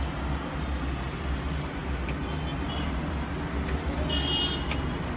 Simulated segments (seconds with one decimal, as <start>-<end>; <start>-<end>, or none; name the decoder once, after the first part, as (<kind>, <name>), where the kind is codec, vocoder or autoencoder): none